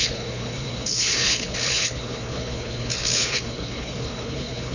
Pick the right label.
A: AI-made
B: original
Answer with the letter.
A